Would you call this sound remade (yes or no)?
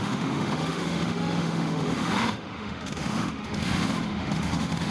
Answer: yes